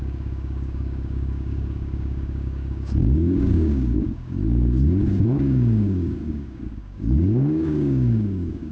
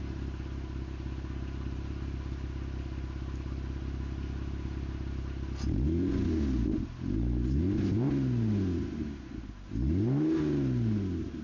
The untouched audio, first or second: second